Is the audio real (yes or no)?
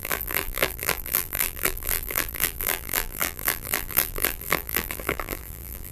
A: no